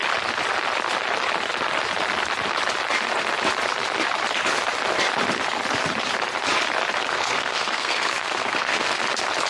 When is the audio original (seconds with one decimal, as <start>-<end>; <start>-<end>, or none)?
0.0-7.1; 9.0-9.5